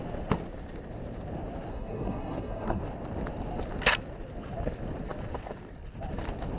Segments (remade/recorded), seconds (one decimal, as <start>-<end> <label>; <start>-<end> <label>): 0.0-1.7 recorded; 1.7-2.8 remade; 2.8-6.6 recorded